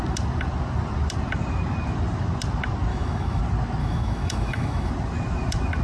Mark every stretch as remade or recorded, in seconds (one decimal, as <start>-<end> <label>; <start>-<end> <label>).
0.0-2.9 recorded; 2.9-3.4 remade; 3.4-3.8 recorded; 3.8-4.9 remade; 4.9-5.8 recorded